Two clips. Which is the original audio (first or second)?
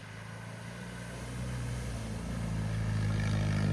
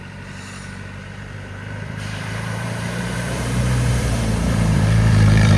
first